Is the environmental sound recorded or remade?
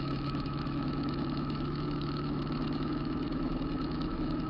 remade